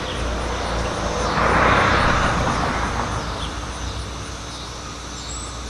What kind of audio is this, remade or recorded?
recorded